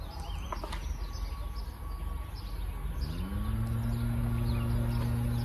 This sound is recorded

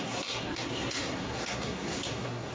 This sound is remade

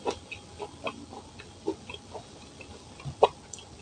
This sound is recorded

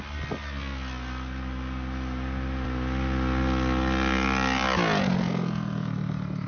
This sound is recorded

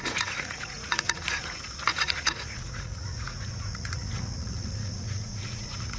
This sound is remade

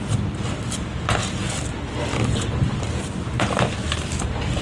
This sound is recorded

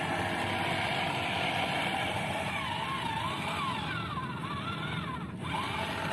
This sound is recorded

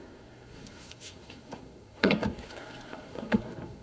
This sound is remade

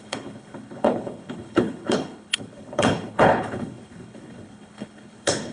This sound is remade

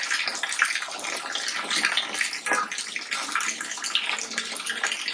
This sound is recorded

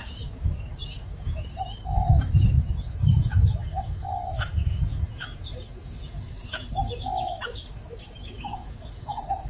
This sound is remade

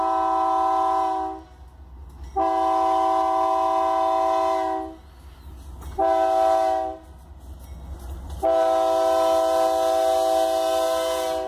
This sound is recorded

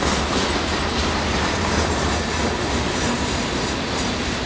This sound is recorded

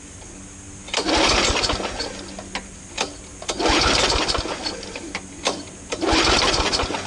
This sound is recorded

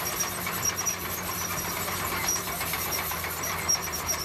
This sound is remade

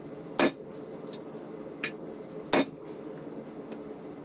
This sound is recorded